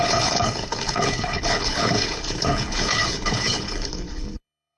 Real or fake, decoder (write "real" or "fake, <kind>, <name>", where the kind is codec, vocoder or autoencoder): fake, codec, HILCodec